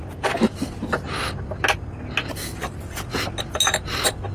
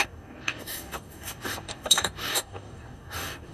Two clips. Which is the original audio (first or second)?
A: first